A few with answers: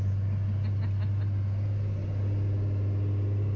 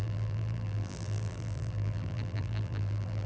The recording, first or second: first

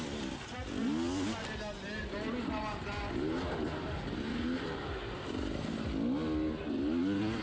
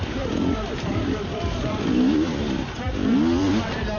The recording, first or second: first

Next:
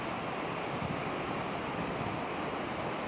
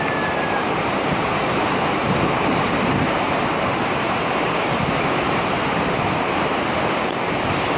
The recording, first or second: first